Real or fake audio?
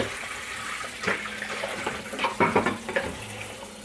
real